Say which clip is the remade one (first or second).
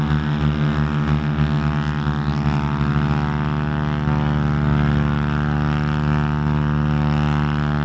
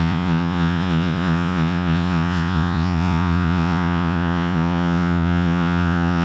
second